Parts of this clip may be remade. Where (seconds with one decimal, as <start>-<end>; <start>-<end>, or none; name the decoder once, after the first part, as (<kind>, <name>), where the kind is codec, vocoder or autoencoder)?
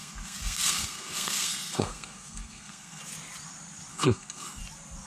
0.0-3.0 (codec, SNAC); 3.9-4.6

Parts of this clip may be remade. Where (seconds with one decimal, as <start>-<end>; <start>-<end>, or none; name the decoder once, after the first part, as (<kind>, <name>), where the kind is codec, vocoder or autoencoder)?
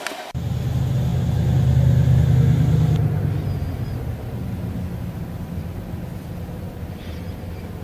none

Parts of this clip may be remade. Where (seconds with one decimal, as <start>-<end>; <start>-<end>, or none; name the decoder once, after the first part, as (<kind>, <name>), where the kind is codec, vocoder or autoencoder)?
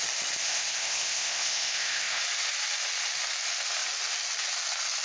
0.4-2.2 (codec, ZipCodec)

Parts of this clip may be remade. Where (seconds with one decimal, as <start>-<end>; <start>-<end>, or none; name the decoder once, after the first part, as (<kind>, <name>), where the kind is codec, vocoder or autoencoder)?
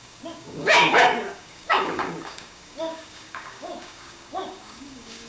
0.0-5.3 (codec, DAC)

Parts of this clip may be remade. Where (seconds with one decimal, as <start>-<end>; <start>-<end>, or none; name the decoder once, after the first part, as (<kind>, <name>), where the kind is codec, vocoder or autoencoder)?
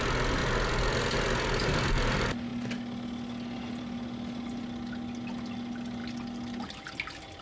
none